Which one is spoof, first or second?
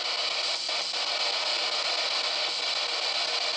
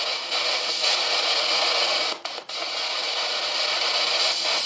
second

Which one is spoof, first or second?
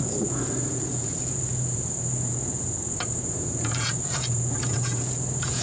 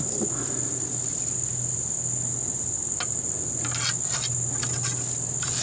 first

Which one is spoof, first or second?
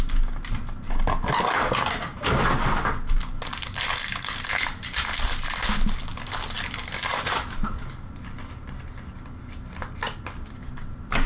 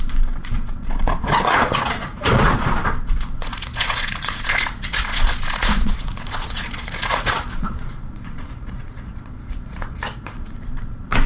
second